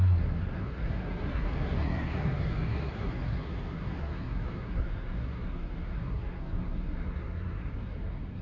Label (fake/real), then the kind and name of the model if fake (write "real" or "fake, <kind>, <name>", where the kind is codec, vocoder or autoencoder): fake, codec, SNAC